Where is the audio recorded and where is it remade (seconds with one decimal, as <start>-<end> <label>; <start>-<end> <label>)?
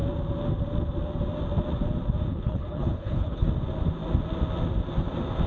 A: 0.0-2.3 recorded; 2.3-3.5 remade; 3.5-5.5 recorded